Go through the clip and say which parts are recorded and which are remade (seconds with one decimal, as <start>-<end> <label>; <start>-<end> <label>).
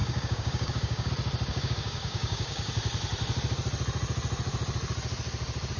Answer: 0.0-1.1 remade; 1.1-1.5 recorded; 1.5-2.7 remade; 2.7-5.8 recorded